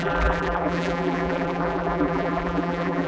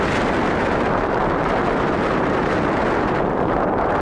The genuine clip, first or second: second